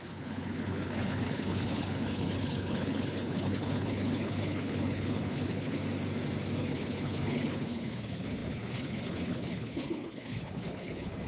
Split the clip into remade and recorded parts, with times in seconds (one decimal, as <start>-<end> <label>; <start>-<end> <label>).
0.0-5.8 remade; 5.8-6.6 recorded; 6.6-11.3 remade